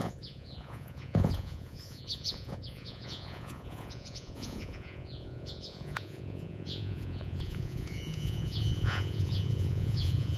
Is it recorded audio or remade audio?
remade